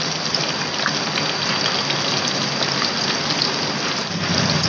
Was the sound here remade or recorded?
recorded